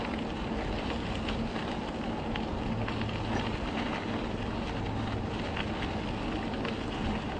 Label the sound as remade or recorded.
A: recorded